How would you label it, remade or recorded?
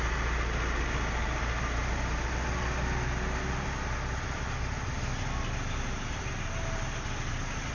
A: recorded